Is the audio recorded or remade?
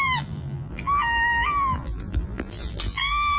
remade